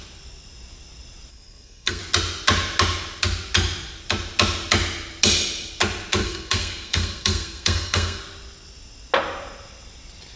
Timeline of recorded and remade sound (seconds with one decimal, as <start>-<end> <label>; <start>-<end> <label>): 0.0-1.3 recorded; 1.3-2.0 remade; 2.0-6.2 recorded; 6.2-8.2 remade; 8.2-10.4 recorded

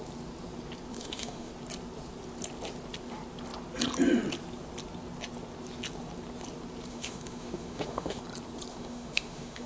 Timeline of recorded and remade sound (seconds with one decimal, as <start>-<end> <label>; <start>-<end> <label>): 0.0-0.9 recorded; 0.9-1.5 remade; 1.5-6.9 recorded; 6.9-8.2 remade; 8.2-8.7 recorded; 8.7-9.7 remade